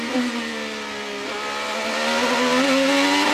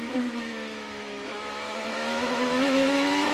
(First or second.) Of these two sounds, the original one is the first